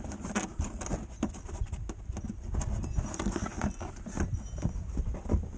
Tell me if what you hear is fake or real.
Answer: real